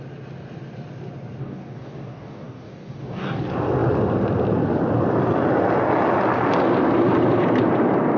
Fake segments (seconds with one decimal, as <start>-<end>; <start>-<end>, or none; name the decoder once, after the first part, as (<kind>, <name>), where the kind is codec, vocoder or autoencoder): 1.4-3.4 (codec, DAC)